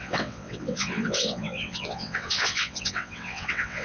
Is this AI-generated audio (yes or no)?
yes